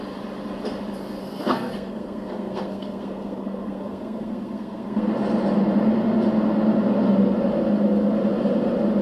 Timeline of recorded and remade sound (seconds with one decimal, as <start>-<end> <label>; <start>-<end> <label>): 0.0-1.2 recorded; 1.2-5.1 remade; 5.1-9.0 recorded